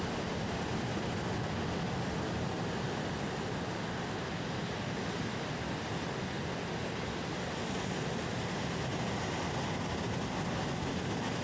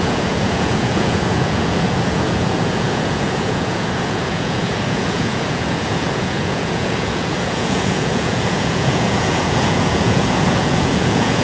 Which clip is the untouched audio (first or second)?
first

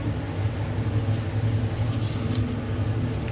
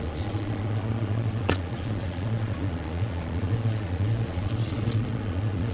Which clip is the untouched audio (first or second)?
first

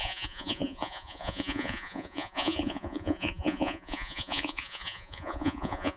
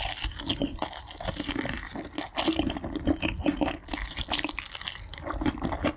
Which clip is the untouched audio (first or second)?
second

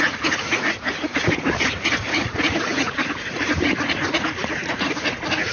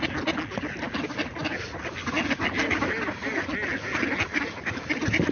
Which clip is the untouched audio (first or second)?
second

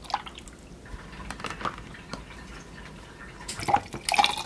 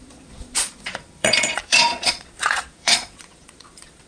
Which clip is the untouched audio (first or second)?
first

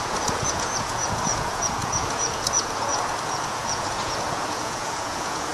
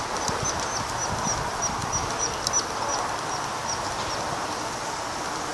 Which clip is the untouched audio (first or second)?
second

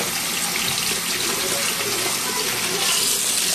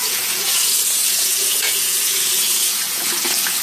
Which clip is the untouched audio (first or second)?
first